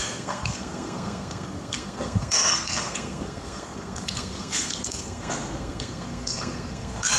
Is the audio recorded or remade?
remade